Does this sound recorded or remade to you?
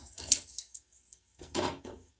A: remade